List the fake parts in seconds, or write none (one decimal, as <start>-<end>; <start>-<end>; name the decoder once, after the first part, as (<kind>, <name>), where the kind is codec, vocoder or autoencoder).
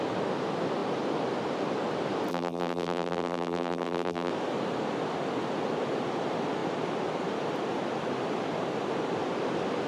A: 2.3-4.3 (vocoder, BigVGAN v2)